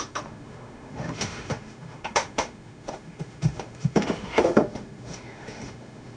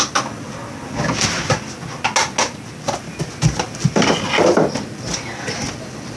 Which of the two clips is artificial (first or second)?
first